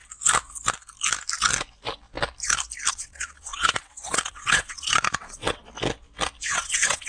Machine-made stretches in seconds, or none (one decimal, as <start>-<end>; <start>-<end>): 2.9-5.6; 6.4-7.1